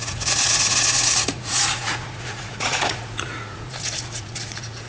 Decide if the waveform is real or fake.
fake